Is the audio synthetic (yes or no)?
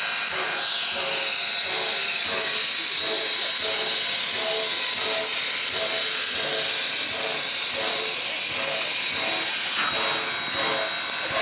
no